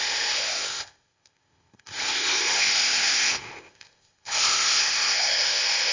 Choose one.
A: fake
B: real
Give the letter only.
A